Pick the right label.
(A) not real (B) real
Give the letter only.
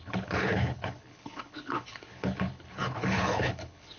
A